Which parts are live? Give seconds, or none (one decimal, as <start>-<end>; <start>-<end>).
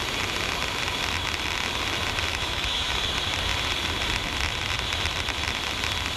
0.0-2.3; 3.0-6.2